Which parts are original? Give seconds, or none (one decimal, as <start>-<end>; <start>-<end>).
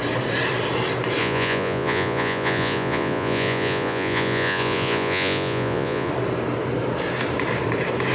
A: 0.0-1.2; 6.1-8.1